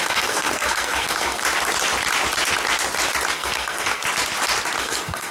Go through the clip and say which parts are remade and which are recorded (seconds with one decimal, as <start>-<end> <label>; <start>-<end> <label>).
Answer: 0.0-1.4 remade; 1.4-3.3 recorded; 3.3-4.0 remade; 4.0-4.8 recorded; 4.8-5.3 remade